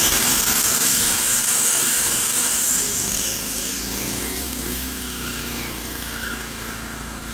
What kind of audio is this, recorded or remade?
remade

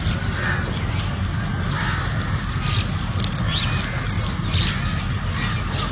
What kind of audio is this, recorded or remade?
recorded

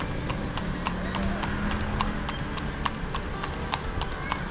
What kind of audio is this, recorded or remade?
recorded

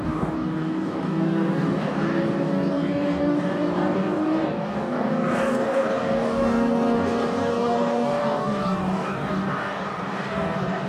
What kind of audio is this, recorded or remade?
remade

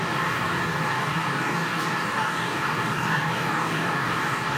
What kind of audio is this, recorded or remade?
remade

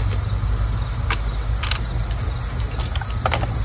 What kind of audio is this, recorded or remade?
recorded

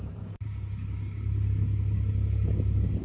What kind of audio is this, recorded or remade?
remade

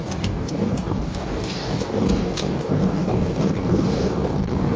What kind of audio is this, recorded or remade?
remade